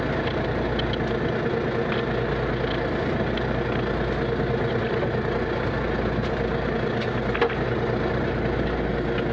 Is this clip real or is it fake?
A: real